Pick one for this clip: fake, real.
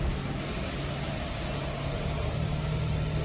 real